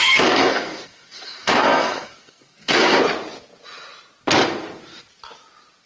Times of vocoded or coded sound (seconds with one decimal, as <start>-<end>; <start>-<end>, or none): 0.0-3.0